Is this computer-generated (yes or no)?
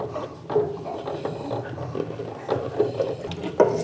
no